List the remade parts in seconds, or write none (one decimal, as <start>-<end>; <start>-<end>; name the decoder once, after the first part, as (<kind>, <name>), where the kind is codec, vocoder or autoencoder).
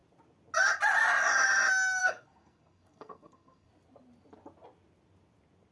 2.0-3.7 (codec, SNAC)